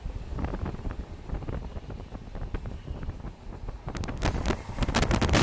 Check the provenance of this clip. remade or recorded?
recorded